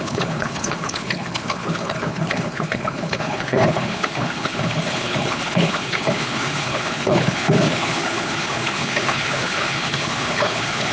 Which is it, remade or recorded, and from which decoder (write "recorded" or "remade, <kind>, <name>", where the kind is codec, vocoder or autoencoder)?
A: remade, codec, HILCodec